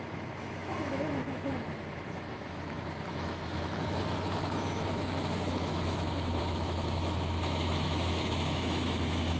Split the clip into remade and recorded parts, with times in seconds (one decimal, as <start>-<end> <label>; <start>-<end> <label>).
0.0-9.4 remade